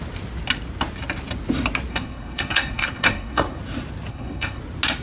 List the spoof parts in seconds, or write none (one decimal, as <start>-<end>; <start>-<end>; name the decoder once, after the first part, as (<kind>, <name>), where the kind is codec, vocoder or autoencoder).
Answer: 1.9-3.6 (codec, SNAC); 4.1-4.6